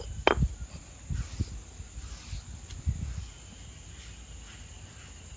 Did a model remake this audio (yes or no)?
no